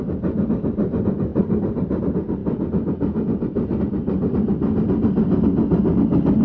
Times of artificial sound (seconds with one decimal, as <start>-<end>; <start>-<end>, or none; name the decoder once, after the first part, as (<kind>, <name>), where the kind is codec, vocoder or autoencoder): 1.3-2.0 (vocoder, BigVGAN v2)